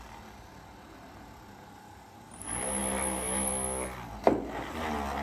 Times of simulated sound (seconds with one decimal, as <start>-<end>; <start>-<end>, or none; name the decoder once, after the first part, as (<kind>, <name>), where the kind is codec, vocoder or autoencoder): none